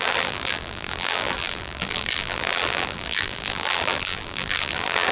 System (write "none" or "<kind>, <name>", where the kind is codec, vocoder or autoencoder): vocoder, BigVGAN v2